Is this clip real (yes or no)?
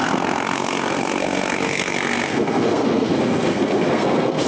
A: no